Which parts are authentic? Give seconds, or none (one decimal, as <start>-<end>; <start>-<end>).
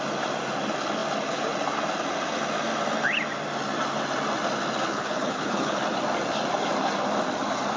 0.0-4.9; 5.8-7.8